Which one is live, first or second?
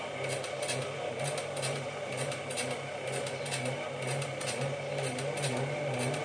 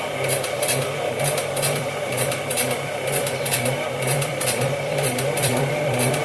first